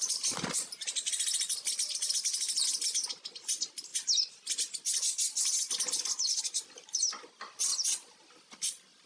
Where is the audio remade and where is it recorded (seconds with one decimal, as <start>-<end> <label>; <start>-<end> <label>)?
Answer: 0.0-9.1 recorded